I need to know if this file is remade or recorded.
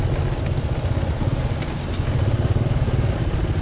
recorded